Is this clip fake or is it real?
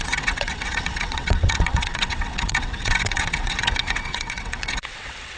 fake